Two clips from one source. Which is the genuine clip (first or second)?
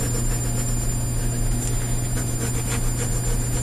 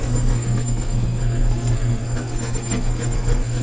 first